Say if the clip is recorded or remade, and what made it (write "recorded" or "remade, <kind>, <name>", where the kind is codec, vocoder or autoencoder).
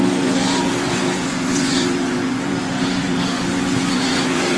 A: remade, vocoder, Vocos